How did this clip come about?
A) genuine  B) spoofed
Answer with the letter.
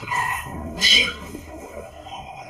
B